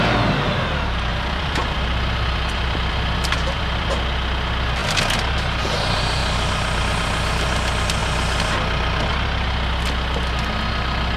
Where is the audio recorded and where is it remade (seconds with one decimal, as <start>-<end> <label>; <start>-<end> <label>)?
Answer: 0.0-1.1 recorded; 1.1-3.9 remade; 3.9-6.2 recorded; 6.2-6.8 remade; 6.8-11.2 recorded